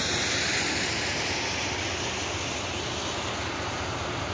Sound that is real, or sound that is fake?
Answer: real